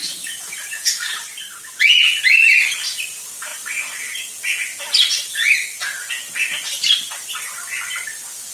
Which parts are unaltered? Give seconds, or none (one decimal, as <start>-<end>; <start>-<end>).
1.0-8.5